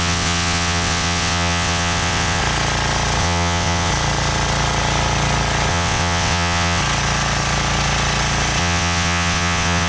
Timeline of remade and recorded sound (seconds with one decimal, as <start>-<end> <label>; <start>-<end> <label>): 0.0-2.4 remade; 2.4-3.2 recorded; 3.2-3.9 remade; 3.9-5.7 recorded; 5.7-6.8 remade; 6.8-8.6 recorded; 8.6-9.9 remade